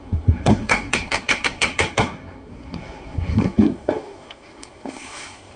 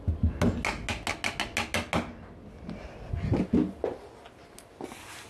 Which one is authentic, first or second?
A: second